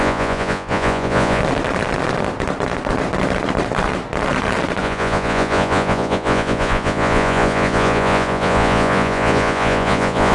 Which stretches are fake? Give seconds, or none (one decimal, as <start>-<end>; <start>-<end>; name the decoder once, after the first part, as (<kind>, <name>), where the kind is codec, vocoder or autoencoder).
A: 0.0-1.4 (vocoder, Vocos); 4.8-10.3